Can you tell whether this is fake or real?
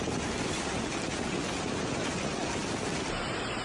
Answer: real